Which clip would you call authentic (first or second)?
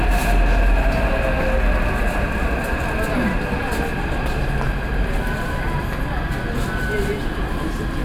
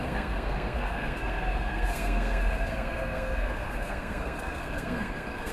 first